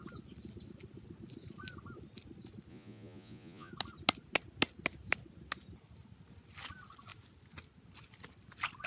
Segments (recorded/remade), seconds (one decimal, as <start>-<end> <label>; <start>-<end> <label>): 0.0-2.7 recorded; 2.7-3.7 remade; 3.7-8.9 recorded